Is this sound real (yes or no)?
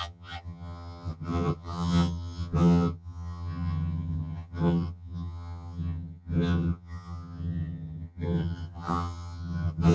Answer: no